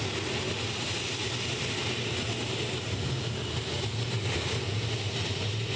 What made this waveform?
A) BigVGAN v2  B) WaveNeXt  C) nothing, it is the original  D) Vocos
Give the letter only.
C